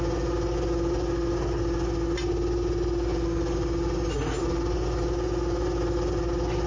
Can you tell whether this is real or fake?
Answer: real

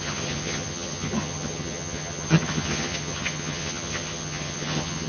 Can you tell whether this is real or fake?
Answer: fake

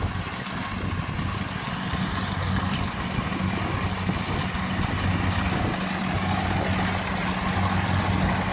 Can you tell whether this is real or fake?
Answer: real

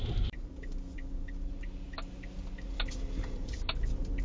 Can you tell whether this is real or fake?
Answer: real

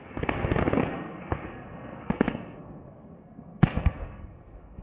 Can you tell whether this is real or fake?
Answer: fake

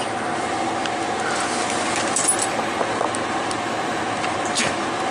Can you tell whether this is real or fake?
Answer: real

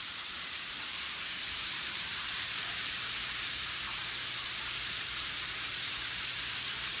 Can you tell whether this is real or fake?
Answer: fake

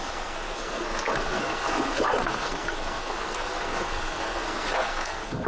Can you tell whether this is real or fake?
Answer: fake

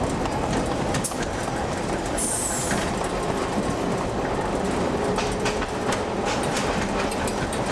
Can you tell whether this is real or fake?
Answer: real